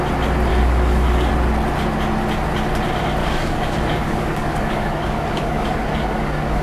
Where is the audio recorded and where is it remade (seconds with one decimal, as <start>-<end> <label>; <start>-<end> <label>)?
0.0-0.5 recorded; 0.5-1.3 remade; 1.3-3.2 recorded; 3.2-6.6 remade